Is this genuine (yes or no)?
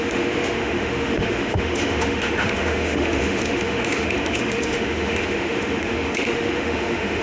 no